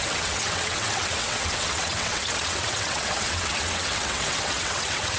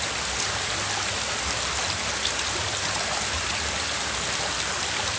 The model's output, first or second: first